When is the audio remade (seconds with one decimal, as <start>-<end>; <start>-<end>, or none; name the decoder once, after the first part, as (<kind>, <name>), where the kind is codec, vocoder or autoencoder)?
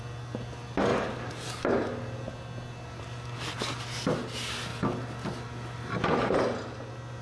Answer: none